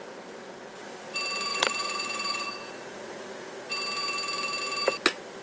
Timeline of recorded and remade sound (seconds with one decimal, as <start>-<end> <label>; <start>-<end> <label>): 0.0-0.4 recorded; 0.4-0.9 remade; 0.9-1.5 recorded; 1.5-3.5 remade; 3.5-5.4 recorded